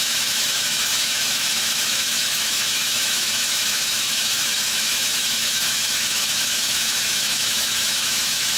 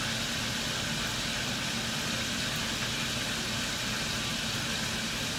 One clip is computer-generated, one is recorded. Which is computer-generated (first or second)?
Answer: first